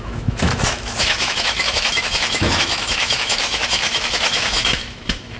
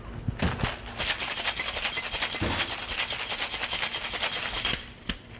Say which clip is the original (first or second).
second